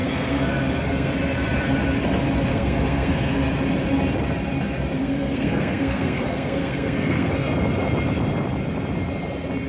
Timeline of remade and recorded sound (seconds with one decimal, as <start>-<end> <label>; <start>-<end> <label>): 0.0-1.1 remade; 1.1-2.5 recorded; 2.5-3.5 remade; 3.5-5.0 recorded; 5.0-7.3 remade; 7.3-9.7 recorded